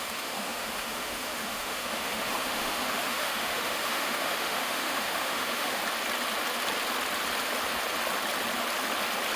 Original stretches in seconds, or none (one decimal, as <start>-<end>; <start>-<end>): 5.8-9.4

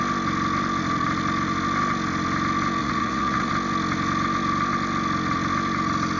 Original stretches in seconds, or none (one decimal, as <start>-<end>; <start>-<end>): 0.0-2.8; 3.5-6.2

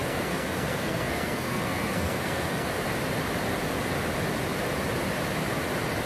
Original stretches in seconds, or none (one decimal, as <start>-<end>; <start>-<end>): 2.7-6.1